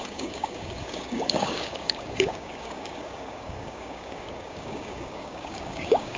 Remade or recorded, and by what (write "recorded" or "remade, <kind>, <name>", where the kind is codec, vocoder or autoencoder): remade, codec, DAC